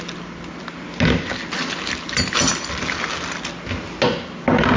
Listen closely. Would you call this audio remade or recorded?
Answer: recorded